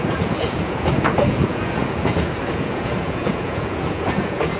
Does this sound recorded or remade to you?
remade